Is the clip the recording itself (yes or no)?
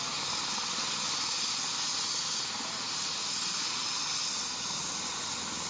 yes